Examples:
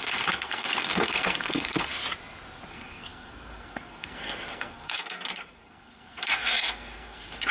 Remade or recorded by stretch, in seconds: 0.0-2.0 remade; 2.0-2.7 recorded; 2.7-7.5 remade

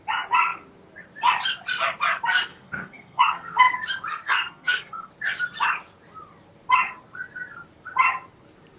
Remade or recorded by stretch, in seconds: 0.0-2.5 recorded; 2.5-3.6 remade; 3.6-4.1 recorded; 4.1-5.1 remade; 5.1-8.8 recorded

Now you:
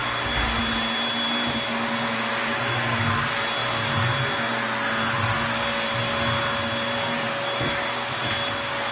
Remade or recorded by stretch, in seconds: 0.0-8.9 recorded

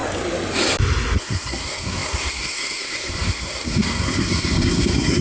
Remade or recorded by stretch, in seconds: 0.0-1.2 recorded; 1.2-5.2 remade